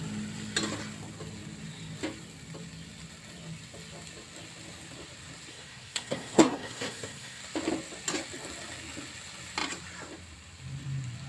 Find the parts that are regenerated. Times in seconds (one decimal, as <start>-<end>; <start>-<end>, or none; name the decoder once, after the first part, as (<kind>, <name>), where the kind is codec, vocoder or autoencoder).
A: 5.5-7.4 (codec, SNAC)